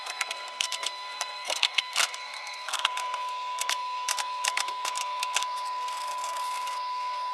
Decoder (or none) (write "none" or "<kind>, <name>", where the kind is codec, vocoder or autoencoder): codec, SNAC